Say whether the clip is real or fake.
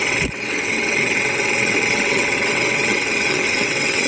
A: fake